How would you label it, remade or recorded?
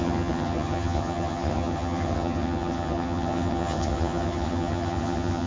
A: remade